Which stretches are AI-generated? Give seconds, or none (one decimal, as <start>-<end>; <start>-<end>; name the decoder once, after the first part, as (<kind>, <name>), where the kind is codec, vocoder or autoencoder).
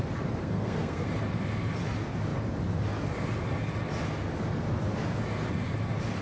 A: 0.4-1.1 (codec, SNAC)